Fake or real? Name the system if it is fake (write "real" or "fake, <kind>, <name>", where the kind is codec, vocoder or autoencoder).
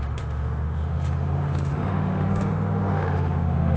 fake, autoencoder, DAC-VAE